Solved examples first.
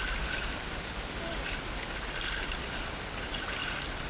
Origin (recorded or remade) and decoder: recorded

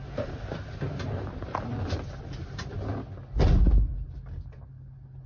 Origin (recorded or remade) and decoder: recorded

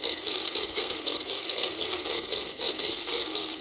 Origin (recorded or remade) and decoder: remade, codec, SNAC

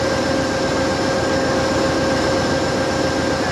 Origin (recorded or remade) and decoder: recorded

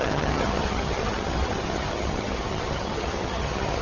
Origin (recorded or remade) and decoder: remade, vocoder, HiFi-GAN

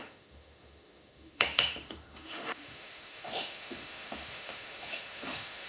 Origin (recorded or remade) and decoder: remade, autoencoder, DAC-VAE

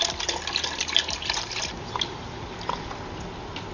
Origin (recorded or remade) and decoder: recorded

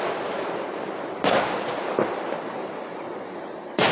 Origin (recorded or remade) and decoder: remade, vocoder, BigVGAN v2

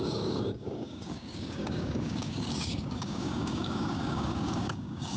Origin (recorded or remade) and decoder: remade, codec, DAC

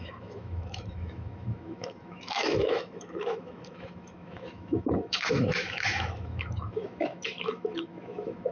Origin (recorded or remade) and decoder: remade, autoencoder, DAC-VAE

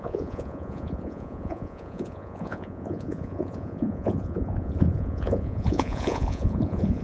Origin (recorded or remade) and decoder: remade, vocoder, Vocos